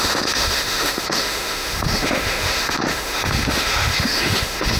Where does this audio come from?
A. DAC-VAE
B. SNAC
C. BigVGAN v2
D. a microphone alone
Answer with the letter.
A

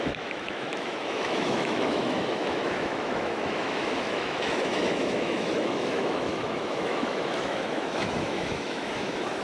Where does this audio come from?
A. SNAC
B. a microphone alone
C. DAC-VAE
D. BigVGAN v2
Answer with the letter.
C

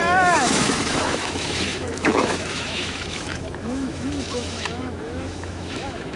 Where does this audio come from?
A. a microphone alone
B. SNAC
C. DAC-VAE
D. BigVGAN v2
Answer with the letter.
C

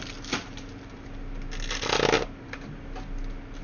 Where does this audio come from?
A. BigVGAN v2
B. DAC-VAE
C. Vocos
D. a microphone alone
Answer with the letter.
D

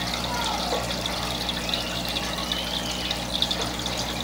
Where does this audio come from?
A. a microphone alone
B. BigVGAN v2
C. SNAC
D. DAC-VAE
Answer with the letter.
A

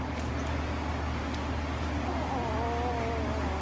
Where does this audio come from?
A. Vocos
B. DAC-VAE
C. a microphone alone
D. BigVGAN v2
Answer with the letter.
C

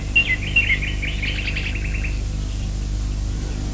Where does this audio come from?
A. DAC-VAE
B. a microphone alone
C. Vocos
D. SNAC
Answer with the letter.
B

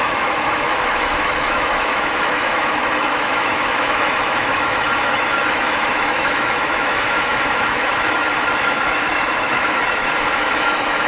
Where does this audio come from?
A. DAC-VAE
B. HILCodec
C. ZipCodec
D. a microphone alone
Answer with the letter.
A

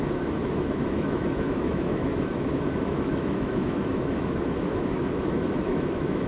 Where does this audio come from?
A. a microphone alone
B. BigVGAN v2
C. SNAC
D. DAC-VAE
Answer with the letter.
D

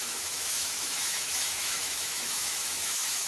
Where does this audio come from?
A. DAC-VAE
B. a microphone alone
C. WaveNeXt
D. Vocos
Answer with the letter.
A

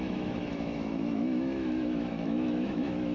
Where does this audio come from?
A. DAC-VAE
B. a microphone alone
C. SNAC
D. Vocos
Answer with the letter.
A